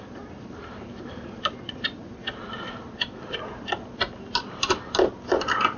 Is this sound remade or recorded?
recorded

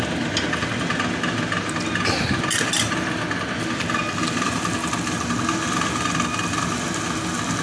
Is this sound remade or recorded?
recorded